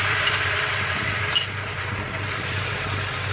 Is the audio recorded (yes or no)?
no